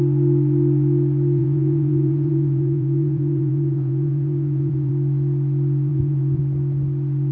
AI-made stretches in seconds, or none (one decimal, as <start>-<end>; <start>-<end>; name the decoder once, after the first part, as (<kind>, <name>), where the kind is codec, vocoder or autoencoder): 1.4-4.9 (vocoder, Vocos); 5.9-6.4